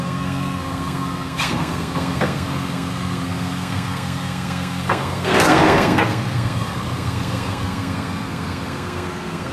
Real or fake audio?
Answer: fake